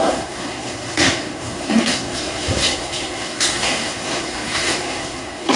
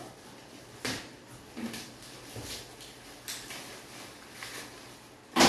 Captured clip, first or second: second